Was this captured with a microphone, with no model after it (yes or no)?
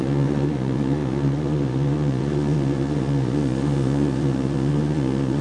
no